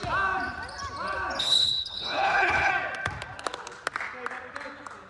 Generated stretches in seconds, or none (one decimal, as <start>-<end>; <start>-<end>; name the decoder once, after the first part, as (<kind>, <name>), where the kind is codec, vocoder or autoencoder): 1.4-2.7 (codec, HILCodec)